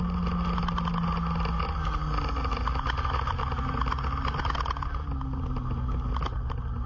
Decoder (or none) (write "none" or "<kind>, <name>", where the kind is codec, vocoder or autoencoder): none